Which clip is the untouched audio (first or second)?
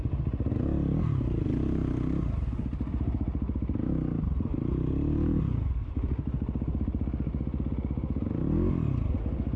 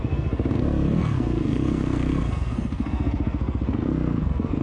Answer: first